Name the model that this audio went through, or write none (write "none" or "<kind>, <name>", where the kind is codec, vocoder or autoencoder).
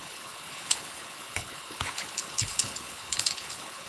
codec, HILCodec